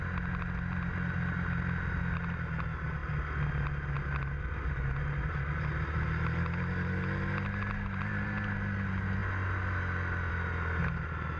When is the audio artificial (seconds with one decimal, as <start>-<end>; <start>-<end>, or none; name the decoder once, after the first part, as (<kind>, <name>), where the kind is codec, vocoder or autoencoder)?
none